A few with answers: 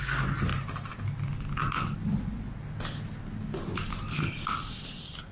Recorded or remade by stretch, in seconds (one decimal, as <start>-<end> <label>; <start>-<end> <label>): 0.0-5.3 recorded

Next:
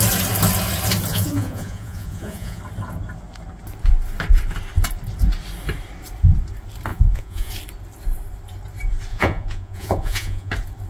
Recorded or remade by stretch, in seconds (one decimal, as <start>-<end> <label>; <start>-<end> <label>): 0.0-1.1 recorded; 1.1-2.6 remade; 2.6-6.9 recorded; 6.9-7.5 remade; 7.5-9.1 recorded; 9.1-10.5 remade; 10.5-10.9 recorded

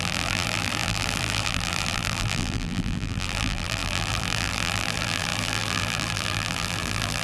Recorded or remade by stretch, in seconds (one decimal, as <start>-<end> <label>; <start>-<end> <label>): 0.0-7.2 remade

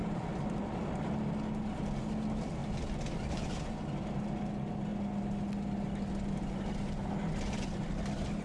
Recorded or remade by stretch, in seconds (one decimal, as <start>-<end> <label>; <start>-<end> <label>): 0.0-0.7 remade; 0.7-2.6 recorded; 2.6-3.8 remade; 3.8-8.4 recorded

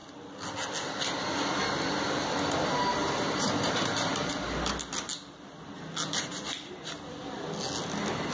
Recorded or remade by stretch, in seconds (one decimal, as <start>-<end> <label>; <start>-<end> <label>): 0.0-2.9 recorded; 2.9-4.3 remade; 4.3-8.3 recorded

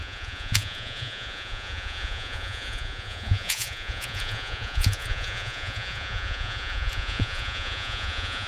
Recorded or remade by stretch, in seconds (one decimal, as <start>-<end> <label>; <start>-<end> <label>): 0.0-8.5 remade